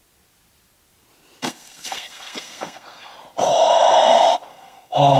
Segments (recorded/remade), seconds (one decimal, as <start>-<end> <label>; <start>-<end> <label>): 0.0-1.4 recorded; 1.4-3.1 remade; 3.1-4.5 recorded; 4.5-5.2 remade